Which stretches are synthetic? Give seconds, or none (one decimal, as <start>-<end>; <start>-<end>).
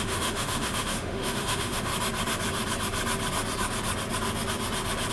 0.0-1.9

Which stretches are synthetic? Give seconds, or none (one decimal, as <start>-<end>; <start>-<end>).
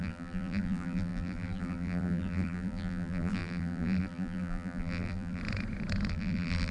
0.0-5.4; 6.1-6.7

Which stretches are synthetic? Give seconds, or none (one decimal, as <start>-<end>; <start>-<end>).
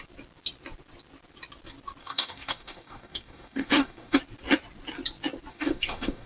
2.0-4.2; 5.5-6.3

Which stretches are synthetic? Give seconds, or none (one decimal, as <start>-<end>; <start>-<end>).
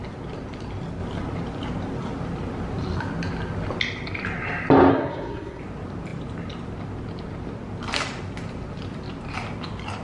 4.9-5.6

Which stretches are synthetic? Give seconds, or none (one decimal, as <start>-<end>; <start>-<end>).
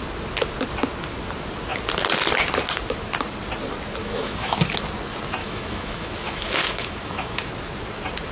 4.0-4.6; 5.4-7.5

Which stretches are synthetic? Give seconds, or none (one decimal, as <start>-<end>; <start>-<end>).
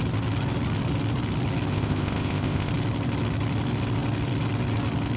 1.7-2.7